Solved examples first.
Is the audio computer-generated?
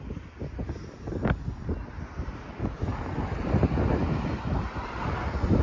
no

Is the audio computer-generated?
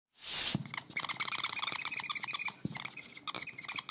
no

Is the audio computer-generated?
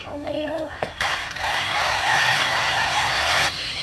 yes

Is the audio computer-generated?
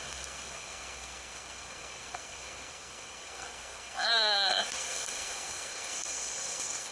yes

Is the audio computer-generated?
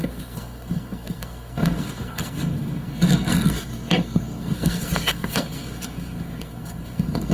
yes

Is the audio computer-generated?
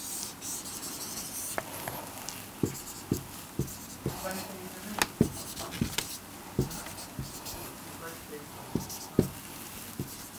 no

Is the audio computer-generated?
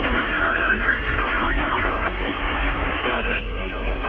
yes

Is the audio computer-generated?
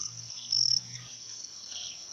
yes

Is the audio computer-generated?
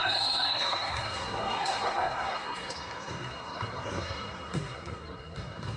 yes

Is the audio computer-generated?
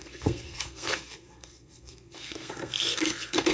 yes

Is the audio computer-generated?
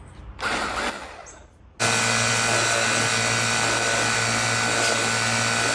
no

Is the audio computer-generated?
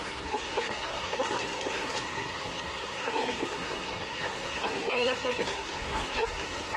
yes